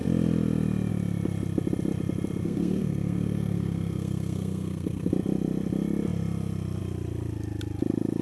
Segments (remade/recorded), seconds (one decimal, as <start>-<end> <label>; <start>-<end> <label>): 0.0-2.4 recorded; 2.4-5.1 remade; 5.1-8.2 recorded